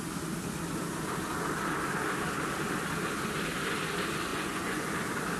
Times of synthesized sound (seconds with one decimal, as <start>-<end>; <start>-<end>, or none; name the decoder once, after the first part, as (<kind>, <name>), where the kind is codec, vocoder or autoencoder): 4.3-4.9 (vocoder, Vocos)